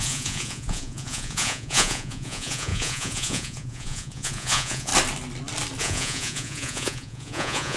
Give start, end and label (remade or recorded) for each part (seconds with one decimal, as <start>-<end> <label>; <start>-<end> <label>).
0.0-4.9 remade; 4.9-5.8 recorded; 5.8-7.8 remade